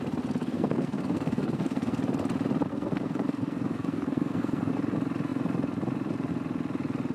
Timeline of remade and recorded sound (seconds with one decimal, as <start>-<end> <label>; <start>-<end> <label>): 0.0-0.4 recorded; 0.4-2.0 remade; 2.0-2.7 recorded; 2.7-4.7 remade; 4.7-7.1 recorded